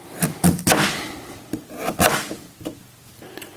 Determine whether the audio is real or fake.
real